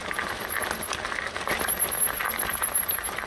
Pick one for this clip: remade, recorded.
recorded